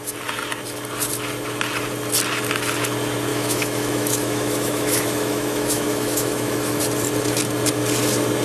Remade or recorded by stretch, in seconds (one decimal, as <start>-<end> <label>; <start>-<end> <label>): 0.0-3.3 recorded; 3.3-6.8 remade; 6.8-8.4 recorded